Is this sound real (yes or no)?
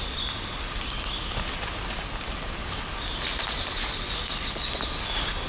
yes